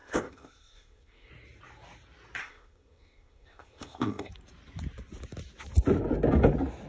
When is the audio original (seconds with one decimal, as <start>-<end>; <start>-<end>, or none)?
1.3-2.4; 4.3-6.9